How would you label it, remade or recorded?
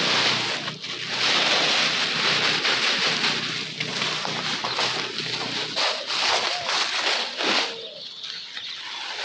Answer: recorded